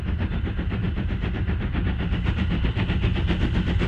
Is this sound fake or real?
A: real